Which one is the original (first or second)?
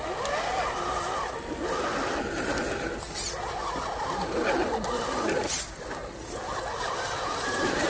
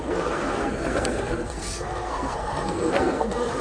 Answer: first